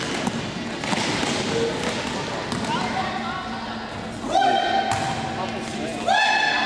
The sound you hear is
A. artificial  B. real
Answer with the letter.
B